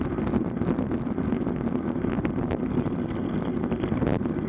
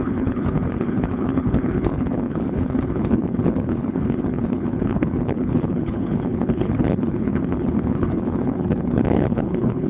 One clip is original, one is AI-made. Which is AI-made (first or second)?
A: second